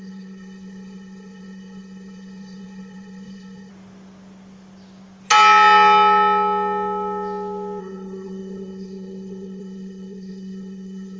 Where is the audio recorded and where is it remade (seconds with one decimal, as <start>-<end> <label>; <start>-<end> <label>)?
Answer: 0.0-3.7 remade; 3.7-7.8 recorded; 7.8-11.2 remade